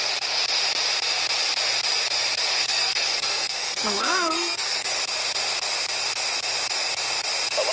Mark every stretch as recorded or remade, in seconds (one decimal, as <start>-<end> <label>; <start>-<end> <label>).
0.0-2.6 recorded; 2.6-4.9 remade; 4.9-7.7 recorded